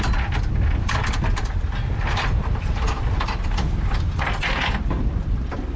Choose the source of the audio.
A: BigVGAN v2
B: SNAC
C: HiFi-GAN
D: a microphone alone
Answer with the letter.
D